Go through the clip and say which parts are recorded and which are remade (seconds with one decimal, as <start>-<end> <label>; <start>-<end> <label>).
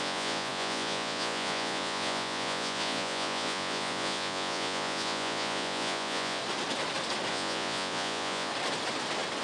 0.0-6.4 remade; 6.4-7.3 recorded; 7.3-8.5 remade; 8.5-9.4 recorded